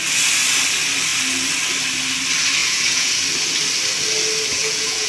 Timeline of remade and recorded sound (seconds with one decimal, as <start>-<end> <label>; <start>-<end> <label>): 0.0-2.6 recorded; 2.6-3.1 remade; 3.1-4.5 recorded; 4.5-5.1 remade